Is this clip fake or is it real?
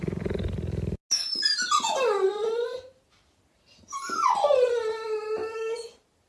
real